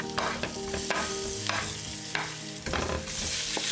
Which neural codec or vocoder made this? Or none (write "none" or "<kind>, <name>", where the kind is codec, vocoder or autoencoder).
none